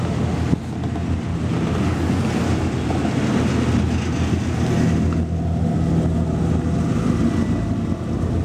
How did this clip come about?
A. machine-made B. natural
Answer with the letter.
B